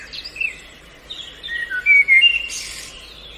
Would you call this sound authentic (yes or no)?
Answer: yes